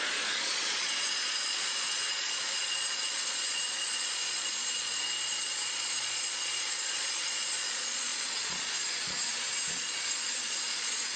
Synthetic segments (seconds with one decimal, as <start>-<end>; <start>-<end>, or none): 0.0-4.9; 5.4-11.2